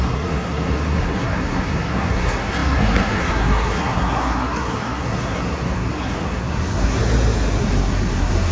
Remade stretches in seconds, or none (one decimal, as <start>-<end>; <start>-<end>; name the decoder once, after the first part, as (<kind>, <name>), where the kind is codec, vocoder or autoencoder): 0.0-7.0 (codec, SNAC); 7.6-8.5